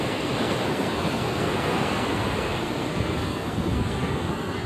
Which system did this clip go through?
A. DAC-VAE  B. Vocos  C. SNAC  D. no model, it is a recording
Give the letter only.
C